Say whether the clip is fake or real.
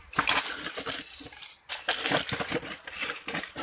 real